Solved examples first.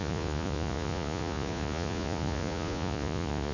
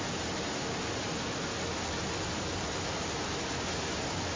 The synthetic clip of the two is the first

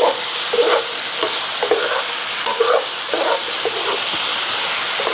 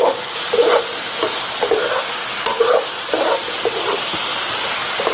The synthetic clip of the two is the second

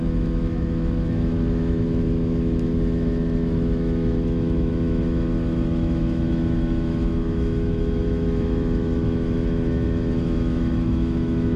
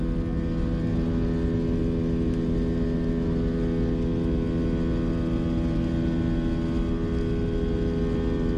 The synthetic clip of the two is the first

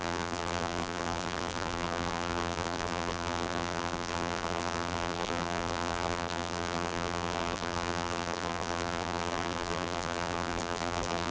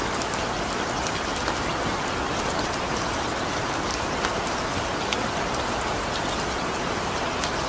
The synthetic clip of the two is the first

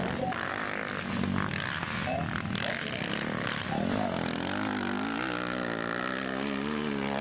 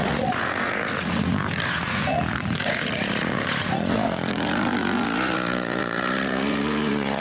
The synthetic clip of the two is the second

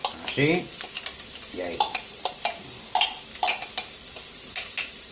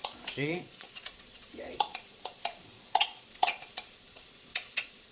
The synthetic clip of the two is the second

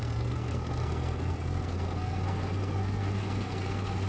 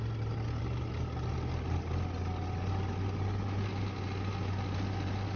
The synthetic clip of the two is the first